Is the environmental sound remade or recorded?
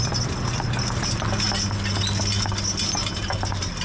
recorded